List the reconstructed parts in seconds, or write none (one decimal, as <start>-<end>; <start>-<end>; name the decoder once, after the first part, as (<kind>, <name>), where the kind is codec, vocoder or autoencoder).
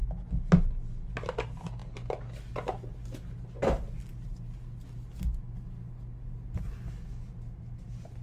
none